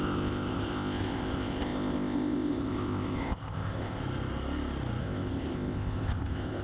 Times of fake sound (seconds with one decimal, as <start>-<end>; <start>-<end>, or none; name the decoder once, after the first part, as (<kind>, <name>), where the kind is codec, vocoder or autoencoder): 0.0-4.0 (codec, ZipCodec); 5.0-6.6